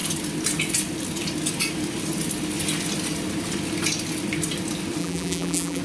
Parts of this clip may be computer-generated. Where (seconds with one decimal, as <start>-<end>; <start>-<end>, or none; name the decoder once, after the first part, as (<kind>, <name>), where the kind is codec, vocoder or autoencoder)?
5.0-5.8 (vocoder, BigVGAN v2)